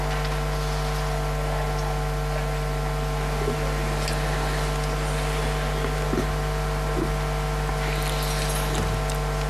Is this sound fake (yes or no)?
no